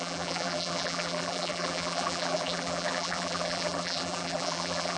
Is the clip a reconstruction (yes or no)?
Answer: yes